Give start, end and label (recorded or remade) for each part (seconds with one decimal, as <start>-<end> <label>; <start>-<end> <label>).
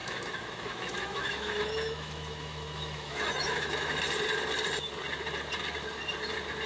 0.0-4.0 remade; 4.0-6.7 recorded